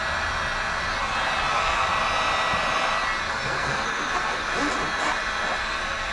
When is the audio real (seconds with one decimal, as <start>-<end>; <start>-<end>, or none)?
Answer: 0.0-1.5; 1.9-3.3; 4.5-5.6